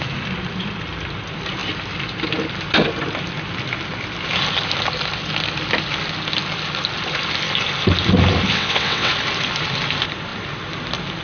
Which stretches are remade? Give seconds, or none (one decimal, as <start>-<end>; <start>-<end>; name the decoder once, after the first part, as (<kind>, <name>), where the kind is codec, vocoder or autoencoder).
8.5-9.1 (vocoder, WaveNeXt)